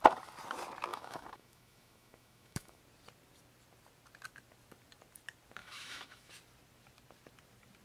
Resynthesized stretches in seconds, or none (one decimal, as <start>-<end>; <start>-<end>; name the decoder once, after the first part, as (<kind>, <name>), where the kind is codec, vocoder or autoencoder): 0.9-2.8 (autoencoder, DAC-VAE); 5.6-6.3